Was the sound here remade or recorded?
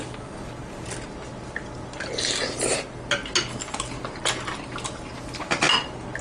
recorded